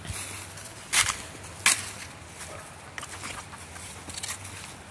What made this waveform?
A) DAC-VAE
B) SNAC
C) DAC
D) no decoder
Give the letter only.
D